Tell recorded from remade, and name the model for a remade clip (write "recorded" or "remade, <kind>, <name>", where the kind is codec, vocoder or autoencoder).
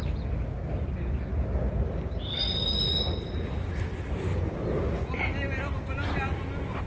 recorded